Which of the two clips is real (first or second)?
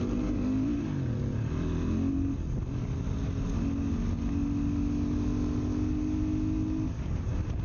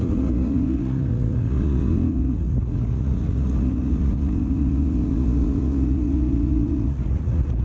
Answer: first